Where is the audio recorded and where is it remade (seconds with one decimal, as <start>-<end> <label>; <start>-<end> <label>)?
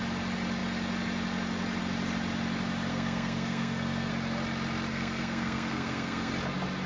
0.0-2.9 recorded; 2.9-4.1 remade; 4.1-4.9 recorded; 4.9-6.3 remade; 6.3-6.9 recorded